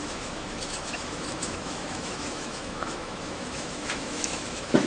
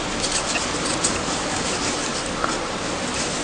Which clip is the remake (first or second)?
first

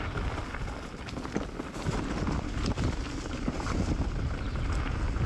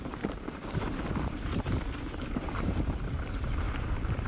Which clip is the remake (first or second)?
second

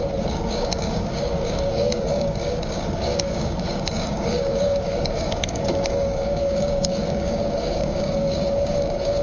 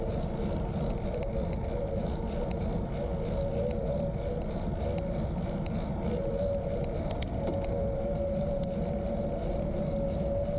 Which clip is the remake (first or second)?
first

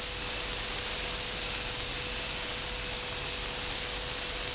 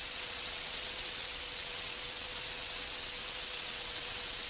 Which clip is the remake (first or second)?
second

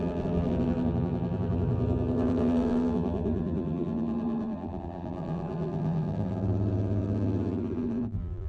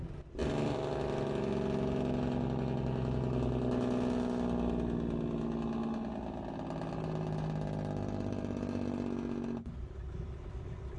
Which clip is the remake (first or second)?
first